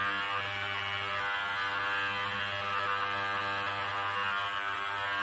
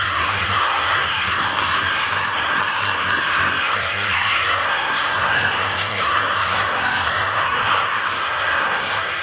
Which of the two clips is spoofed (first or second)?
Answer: second